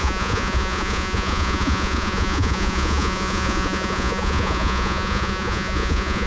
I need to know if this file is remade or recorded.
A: remade